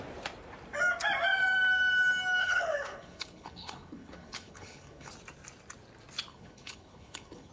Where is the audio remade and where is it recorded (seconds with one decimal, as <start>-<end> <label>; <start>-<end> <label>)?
0.0-2.4 recorded; 2.4-5.1 remade; 5.1-6.3 recorded; 6.3-7.5 remade